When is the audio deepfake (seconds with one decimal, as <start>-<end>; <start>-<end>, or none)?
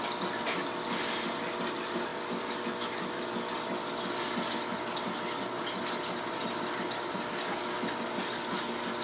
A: none